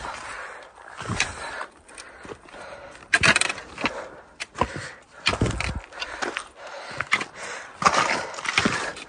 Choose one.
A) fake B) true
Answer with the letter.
A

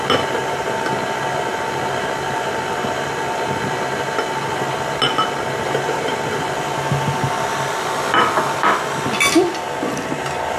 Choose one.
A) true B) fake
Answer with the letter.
A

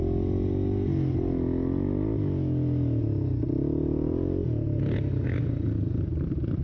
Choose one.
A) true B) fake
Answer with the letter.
A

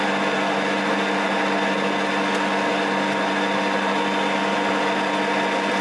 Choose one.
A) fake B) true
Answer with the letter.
B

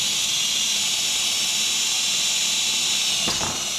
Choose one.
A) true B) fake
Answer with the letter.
A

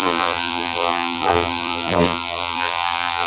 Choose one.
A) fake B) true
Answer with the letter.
A